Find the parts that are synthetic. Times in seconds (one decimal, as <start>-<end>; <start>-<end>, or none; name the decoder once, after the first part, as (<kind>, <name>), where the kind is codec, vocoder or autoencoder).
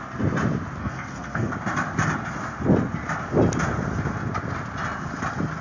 0.8-1.5 (codec, SNAC)